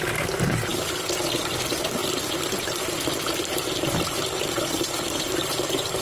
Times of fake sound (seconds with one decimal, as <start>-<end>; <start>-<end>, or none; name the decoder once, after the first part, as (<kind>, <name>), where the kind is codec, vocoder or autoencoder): 0.0-2.0 (vocoder, BigVGAN v2); 4.5-6.0